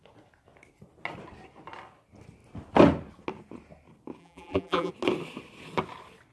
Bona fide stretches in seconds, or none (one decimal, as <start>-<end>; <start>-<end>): 0.0-4.2; 4.9-6.3